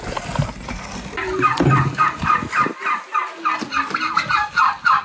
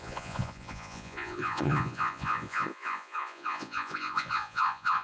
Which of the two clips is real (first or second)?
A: first